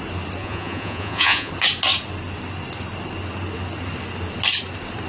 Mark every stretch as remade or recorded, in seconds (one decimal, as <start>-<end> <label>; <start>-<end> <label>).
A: 0.0-0.4 recorded; 0.4-1.5 remade; 1.5-5.1 recorded